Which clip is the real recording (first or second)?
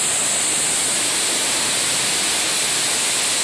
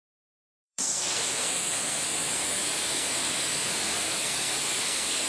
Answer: first